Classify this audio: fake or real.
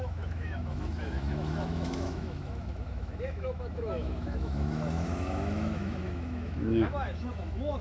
fake